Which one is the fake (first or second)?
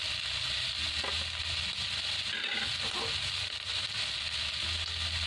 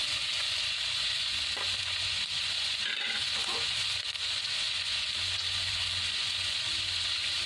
second